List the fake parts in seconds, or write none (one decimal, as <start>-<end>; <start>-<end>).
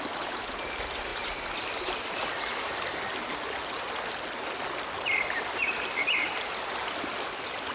none